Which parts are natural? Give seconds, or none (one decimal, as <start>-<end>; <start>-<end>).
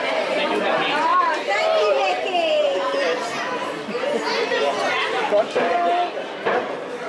0.0-7.1